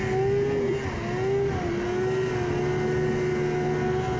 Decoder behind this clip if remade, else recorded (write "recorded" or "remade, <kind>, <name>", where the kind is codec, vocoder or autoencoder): recorded